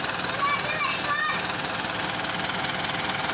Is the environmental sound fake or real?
real